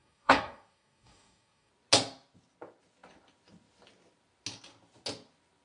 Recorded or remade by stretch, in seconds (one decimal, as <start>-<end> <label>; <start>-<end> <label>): 0.0-1.7 remade; 1.7-5.6 recorded